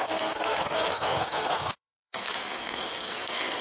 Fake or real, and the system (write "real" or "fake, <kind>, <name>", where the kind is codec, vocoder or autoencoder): fake, codec, SNAC